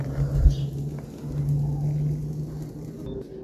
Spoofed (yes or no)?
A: no